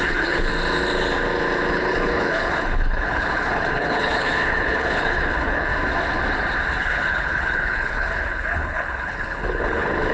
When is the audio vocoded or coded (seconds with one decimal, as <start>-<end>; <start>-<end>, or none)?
0.0-0.5; 1.7-5.7; 6.8-10.1